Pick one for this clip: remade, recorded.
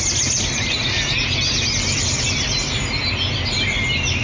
recorded